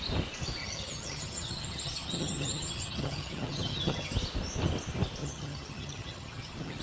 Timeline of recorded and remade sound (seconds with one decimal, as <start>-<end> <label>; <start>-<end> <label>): 0.0-0.6 recorded; 0.6-4.1 remade; 4.1-5.2 recorded; 5.2-6.8 remade